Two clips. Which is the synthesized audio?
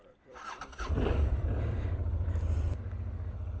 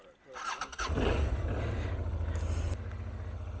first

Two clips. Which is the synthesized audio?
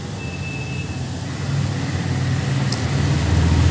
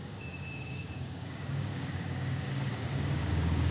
second